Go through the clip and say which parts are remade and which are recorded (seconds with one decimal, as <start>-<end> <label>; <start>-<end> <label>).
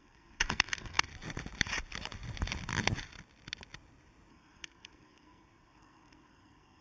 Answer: 0.0-1.1 remade; 1.1-4.3 recorded; 4.3-6.8 remade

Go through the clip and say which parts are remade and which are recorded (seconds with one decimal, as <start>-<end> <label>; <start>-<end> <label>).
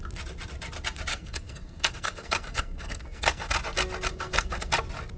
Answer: 0.0-1.1 recorded; 1.1-3.5 remade; 3.5-4.1 recorded; 4.1-4.7 remade; 4.7-5.2 recorded